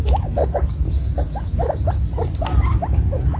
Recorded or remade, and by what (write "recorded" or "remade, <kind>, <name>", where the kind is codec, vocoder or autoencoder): recorded